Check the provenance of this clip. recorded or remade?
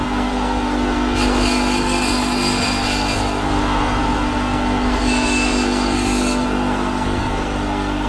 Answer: remade